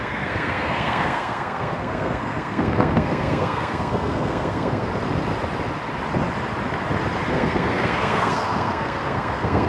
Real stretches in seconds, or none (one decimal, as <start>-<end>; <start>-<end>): 4.9-7.3